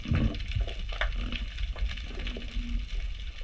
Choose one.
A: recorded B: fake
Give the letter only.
A